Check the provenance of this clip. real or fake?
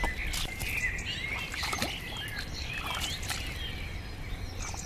real